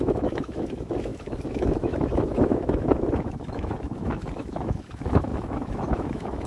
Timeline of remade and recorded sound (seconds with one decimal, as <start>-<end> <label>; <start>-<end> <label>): 0.0-6.5 remade